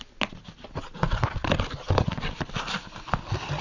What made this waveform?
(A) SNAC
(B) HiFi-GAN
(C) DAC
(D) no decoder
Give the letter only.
D